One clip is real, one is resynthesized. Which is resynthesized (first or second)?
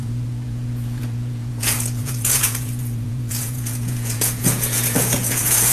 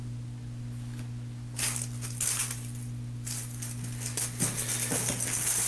first